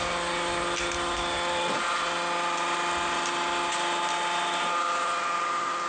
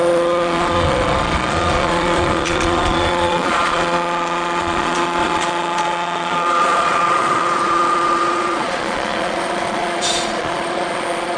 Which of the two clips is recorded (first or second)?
first